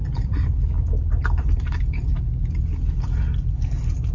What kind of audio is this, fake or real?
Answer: real